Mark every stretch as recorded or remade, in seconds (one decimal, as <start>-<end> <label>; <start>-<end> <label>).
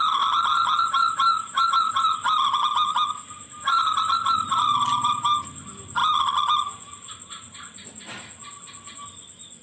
0.0-9.6 recorded